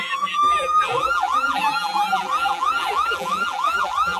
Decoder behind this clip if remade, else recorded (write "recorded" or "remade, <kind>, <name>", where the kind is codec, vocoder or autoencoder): remade, vocoder, BigVGAN v2